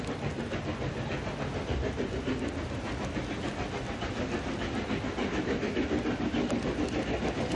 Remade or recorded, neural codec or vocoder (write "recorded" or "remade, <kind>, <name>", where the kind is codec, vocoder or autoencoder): recorded